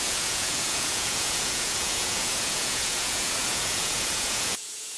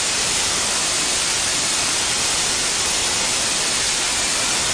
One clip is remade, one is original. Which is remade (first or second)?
first